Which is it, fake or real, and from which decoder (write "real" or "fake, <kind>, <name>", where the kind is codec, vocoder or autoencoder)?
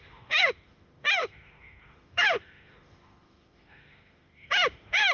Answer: fake, autoencoder, DAC-VAE